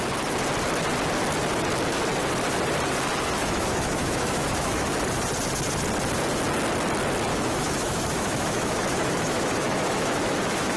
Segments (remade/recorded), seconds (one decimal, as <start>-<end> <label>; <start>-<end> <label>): 0.0-3.4 recorded; 3.4-4.9 remade; 4.9-7.3 recorded; 7.3-10.8 remade